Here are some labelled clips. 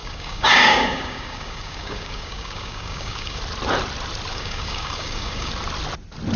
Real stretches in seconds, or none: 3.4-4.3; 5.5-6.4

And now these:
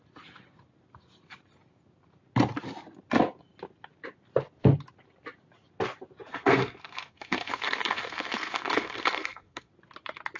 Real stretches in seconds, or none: 0.0-6.3; 9.7-10.4

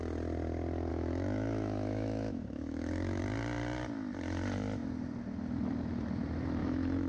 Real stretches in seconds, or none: 0.0-0.9; 3.2-6.6

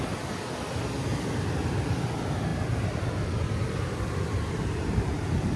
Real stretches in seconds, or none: 0.0-5.6

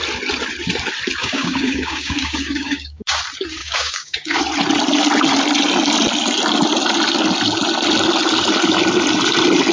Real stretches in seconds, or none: 0.0-1.2; 3.2-3.6; 4.4-9.7

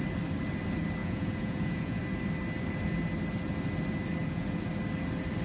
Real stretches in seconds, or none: 0.0-1.0; 2.0-4.2; 4.7-5.4